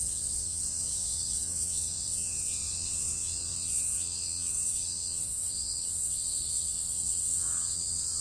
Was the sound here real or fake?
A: fake